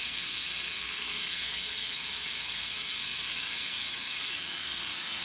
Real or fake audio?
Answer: fake